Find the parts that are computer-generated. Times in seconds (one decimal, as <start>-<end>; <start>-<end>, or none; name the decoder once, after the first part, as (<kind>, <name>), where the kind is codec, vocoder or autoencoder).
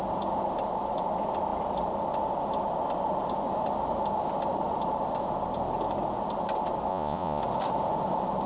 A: 6.9-7.4 (vocoder, Vocos)